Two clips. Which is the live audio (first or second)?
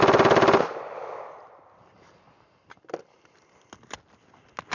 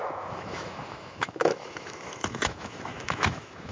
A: first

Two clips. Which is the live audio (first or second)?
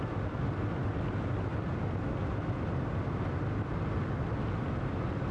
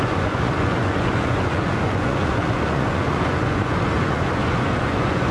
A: first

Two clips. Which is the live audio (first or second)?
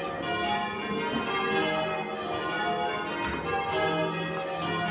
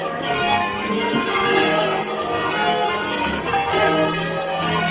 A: first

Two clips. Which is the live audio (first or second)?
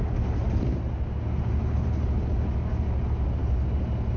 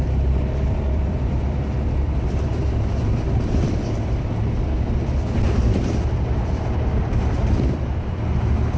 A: first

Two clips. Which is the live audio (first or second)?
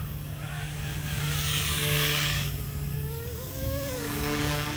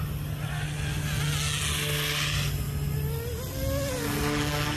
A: second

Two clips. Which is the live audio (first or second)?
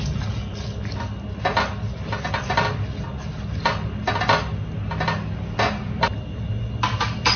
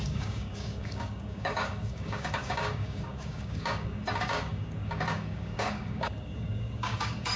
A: first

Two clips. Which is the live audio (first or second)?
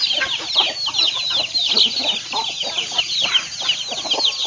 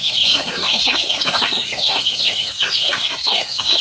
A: first